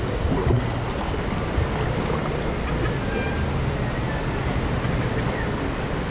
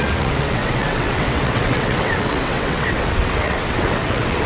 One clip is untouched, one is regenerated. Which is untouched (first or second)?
first